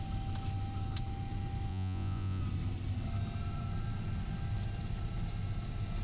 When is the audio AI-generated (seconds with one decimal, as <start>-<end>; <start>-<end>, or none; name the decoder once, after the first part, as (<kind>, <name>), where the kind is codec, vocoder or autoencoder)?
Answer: 1.7-2.4 (vocoder, Vocos)